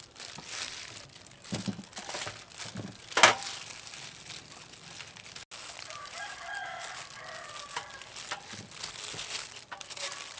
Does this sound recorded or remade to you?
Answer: recorded